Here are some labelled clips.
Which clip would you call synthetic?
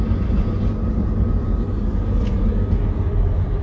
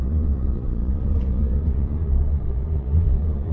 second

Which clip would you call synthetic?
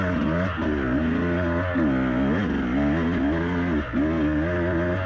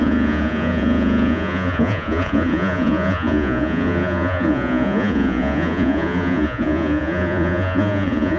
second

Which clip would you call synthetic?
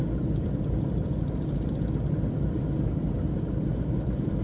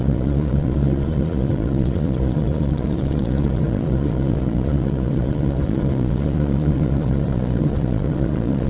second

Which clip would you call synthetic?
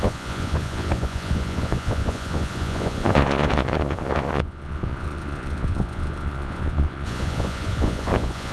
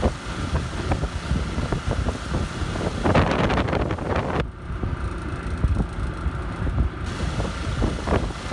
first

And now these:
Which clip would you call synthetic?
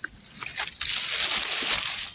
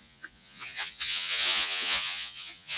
second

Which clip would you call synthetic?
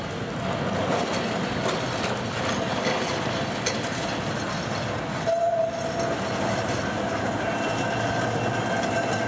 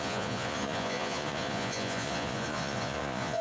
second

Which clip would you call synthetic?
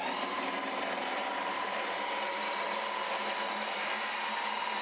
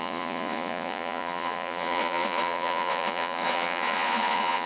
second